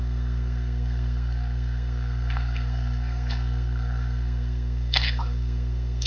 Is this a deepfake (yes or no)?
yes